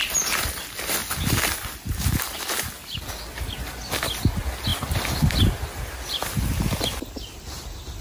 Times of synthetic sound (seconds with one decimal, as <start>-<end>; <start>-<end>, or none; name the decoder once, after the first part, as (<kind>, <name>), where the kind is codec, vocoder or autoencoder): none